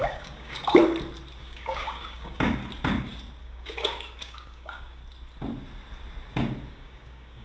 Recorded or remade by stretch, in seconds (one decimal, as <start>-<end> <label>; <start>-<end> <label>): 0.0-0.8 remade; 0.8-1.4 recorded; 1.4-2.6 remade; 2.6-3.4 recorded; 3.4-5.0 remade; 5.0-6.7 recorded; 6.7-7.4 remade